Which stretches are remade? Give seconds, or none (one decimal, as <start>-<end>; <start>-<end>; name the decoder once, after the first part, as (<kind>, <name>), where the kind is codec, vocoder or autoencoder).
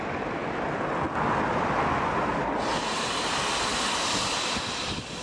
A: none